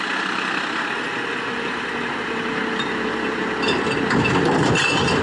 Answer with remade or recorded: recorded